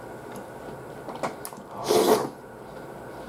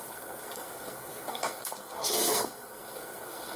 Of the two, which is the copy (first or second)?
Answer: second